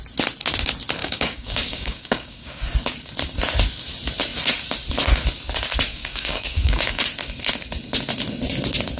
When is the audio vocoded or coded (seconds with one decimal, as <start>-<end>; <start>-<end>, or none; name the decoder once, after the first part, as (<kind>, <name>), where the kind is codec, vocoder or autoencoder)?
1.0-2.6 (codec, DAC); 5.9-7.0

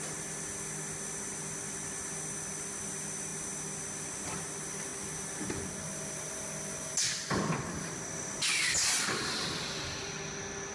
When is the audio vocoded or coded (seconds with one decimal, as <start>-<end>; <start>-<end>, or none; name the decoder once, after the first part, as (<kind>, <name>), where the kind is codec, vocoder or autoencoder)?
none

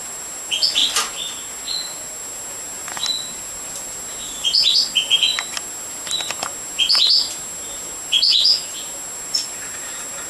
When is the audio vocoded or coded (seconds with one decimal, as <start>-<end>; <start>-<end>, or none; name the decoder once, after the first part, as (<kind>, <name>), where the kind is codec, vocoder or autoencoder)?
none

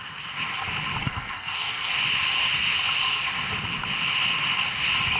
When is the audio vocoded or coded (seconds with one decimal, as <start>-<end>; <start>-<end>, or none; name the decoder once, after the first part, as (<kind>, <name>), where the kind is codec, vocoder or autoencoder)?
1.0-1.9 (codec, SNAC)

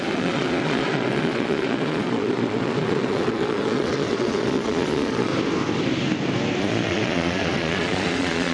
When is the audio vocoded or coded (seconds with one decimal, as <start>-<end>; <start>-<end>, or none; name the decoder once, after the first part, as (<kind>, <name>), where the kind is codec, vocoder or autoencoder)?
0.0-5.3 (vocoder, Vocos); 6.6-8.5